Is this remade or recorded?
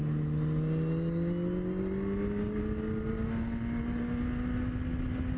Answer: recorded